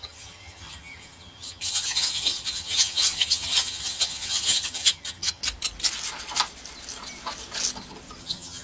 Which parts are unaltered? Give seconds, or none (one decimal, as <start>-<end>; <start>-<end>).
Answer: 5.4-8.2